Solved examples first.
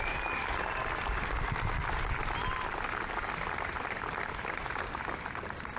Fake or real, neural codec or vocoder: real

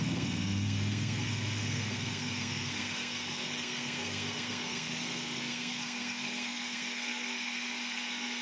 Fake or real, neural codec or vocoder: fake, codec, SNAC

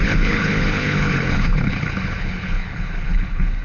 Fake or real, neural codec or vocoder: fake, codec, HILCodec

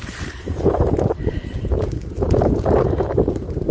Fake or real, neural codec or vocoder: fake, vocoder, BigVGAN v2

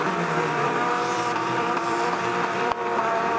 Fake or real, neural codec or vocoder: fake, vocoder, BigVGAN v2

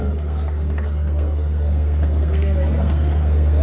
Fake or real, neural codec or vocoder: fake, codec, SNAC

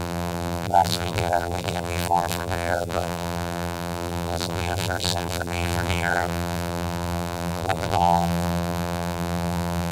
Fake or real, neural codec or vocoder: fake, vocoder, BigVGAN v2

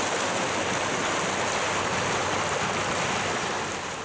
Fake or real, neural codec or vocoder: real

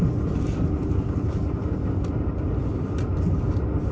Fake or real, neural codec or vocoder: real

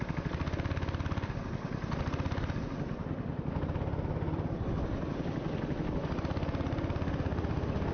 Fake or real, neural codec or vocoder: real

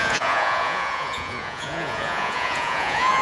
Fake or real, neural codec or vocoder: fake, vocoder, Vocos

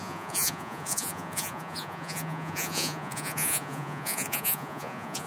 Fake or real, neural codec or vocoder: fake, vocoder, Vocos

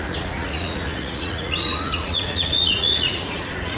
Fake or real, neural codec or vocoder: fake, vocoder, Vocos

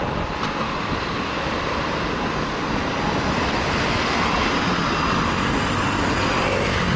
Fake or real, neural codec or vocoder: real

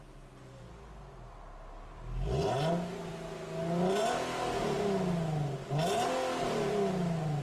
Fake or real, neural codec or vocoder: real